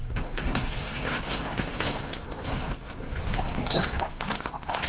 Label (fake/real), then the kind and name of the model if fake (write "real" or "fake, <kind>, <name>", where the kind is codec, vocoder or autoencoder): fake, codec, SNAC